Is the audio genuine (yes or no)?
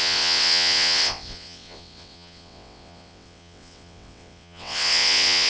no